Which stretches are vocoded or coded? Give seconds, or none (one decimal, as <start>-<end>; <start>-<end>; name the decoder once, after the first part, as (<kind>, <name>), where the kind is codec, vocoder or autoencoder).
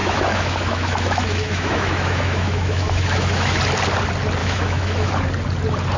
0.0-3.6 (autoencoder, DAC-VAE); 4.4-5.1